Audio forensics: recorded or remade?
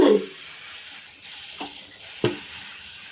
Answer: remade